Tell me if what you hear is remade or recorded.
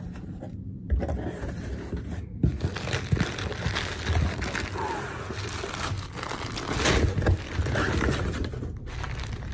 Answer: recorded